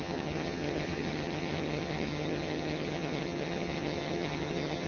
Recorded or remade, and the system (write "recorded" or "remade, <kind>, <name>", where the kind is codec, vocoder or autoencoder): remade, vocoder, HiFi-GAN